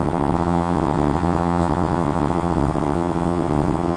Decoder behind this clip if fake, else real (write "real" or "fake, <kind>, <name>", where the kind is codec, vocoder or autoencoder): fake, vocoder, WaveNeXt